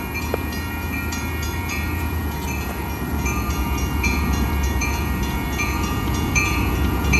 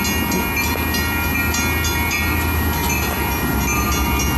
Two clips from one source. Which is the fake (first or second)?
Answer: first